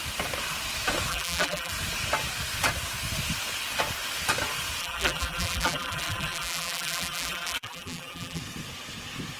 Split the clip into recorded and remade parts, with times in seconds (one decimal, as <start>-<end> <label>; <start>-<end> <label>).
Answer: 0.0-1.1 recorded; 1.1-1.7 remade; 1.7-4.8 recorded; 4.8-8.4 remade; 8.4-9.4 recorded